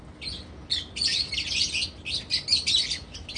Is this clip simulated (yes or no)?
no